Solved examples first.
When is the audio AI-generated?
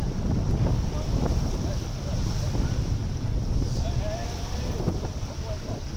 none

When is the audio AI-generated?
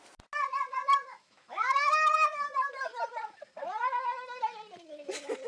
1.1-2.7 (autoencoder, DAC-VAE)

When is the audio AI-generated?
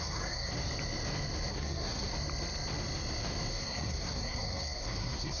0.0-0.5 (codec, SNAC); 1.5-2.1; 3.5-5.4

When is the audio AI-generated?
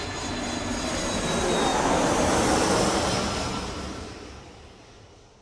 none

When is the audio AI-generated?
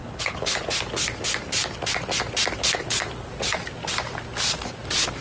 0.0-0.7 (codec, HILCodec); 2.6-3.3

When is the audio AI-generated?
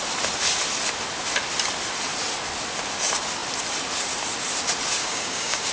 5.0-5.7 (codec, DAC)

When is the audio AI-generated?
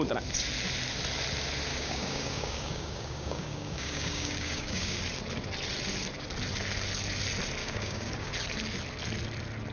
1.7-5.0 (codec, DAC); 7.6-8.3